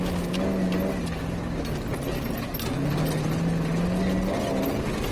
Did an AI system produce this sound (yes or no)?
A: no